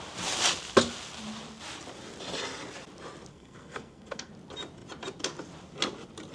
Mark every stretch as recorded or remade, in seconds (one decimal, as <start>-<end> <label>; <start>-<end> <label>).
0.0-3.3 recorded; 3.3-4.3 remade; 4.3-6.3 recorded